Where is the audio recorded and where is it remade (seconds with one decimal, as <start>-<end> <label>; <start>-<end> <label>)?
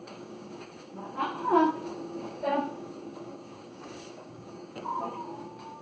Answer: 0.0-1.0 remade; 1.0-1.7 recorded; 1.7-5.8 remade